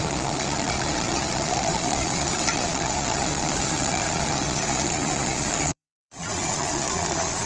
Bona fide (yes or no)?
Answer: no